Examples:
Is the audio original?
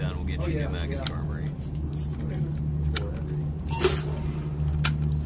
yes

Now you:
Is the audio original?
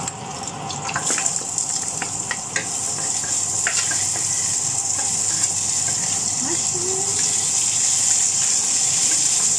yes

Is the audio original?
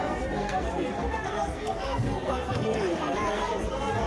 no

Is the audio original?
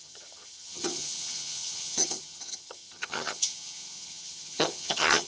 no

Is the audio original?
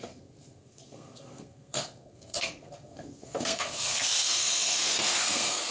no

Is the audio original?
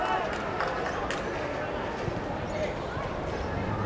yes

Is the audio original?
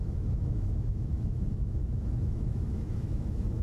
no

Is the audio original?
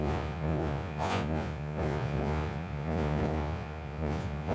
no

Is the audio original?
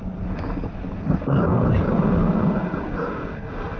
yes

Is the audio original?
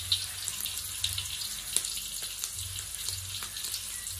yes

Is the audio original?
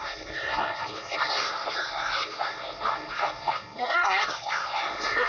no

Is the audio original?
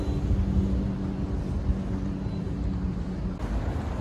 yes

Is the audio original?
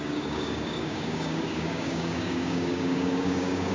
no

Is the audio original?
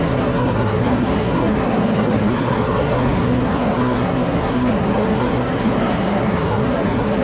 no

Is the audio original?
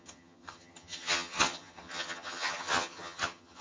no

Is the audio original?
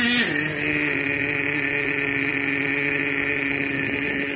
yes